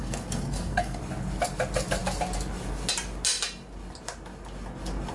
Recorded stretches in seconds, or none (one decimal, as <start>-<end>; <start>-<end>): 1.0-5.1

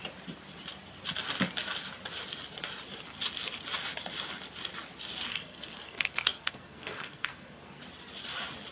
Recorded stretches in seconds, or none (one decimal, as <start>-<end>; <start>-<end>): 0.0-5.3; 7.8-8.7